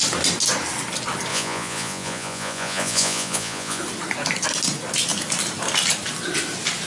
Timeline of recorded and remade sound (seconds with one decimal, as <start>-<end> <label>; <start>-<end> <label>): 0.0-1.3 recorded; 1.3-3.8 remade; 3.8-6.9 recorded